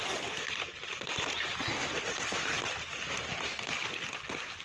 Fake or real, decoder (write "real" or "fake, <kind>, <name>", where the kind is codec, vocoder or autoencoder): real